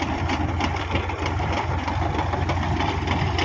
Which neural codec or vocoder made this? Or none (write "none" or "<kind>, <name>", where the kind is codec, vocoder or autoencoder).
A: vocoder, BigVGAN v2